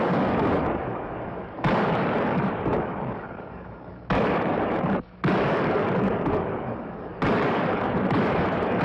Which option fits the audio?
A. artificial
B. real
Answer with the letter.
A